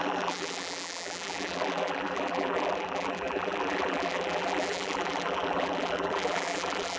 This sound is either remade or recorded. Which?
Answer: remade